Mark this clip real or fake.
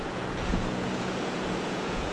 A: fake